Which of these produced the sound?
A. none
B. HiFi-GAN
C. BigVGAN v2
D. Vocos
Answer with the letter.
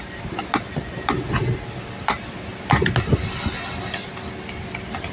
A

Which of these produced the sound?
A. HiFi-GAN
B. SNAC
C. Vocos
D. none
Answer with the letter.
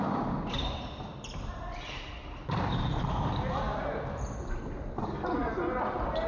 D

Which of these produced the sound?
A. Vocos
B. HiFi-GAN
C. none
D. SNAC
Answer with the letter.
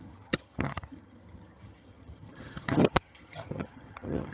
B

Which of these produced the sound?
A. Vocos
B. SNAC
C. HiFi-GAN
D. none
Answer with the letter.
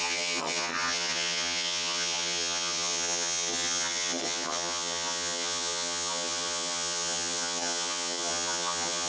C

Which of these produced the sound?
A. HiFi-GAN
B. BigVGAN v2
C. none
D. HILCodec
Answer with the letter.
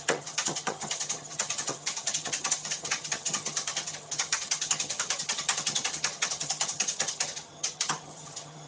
A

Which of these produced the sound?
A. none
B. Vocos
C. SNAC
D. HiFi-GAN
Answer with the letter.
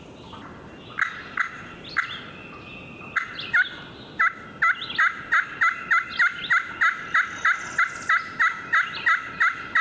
A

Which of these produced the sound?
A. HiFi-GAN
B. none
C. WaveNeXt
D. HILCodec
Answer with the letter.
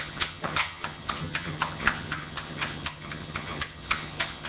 A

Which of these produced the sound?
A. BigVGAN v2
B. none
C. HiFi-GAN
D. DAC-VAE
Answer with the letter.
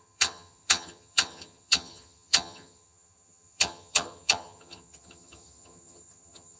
C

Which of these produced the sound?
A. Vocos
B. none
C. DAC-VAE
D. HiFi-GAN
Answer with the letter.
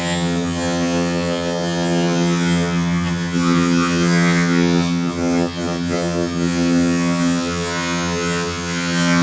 D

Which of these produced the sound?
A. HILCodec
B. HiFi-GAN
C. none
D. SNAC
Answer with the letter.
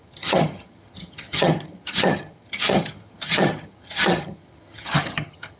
B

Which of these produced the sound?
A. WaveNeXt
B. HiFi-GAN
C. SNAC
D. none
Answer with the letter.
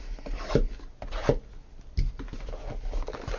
D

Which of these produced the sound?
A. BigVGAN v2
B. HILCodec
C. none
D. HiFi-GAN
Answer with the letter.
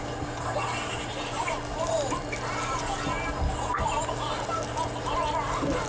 C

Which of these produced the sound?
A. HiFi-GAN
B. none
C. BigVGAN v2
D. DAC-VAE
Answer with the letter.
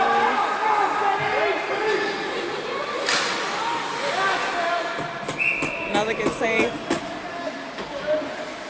B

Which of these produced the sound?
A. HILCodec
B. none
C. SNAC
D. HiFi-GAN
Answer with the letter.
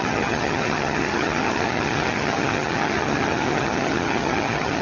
D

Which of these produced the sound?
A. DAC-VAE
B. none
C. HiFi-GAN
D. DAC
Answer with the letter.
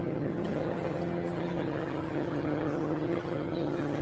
C